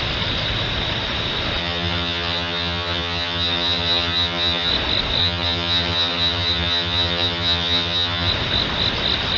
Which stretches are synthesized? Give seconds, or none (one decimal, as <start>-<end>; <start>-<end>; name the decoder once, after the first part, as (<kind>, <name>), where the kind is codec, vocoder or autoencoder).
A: 1.6-4.7 (vocoder, HiFi-GAN); 5.2-8.3